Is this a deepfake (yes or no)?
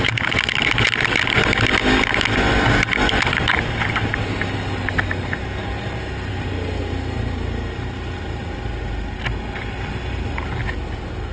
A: no